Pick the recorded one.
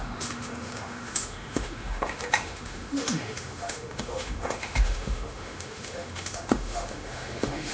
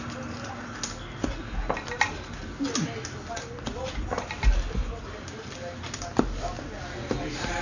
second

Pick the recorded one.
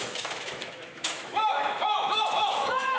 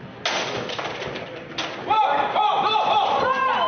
second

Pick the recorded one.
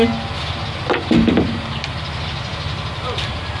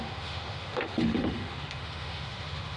first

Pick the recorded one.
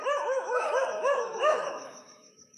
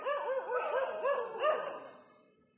second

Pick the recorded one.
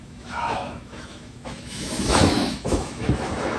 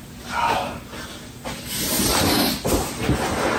second